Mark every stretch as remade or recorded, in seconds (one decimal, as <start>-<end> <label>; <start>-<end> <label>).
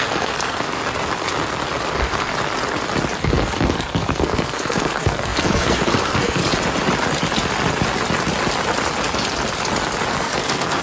0.0-0.8 remade; 0.8-1.9 recorded; 1.9-2.3 remade; 2.3-3.2 recorded; 3.2-6.4 remade; 6.4-10.1 recorded; 10.1-10.8 remade